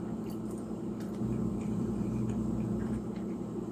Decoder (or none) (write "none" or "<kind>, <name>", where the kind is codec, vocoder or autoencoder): vocoder, BigVGAN v2